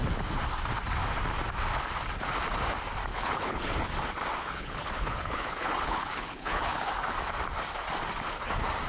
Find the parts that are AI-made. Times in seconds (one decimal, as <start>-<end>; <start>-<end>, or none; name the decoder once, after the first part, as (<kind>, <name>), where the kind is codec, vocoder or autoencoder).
3.1-3.9 (codec, HILCodec); 4.4-6.9